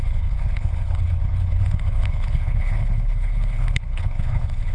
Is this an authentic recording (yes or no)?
no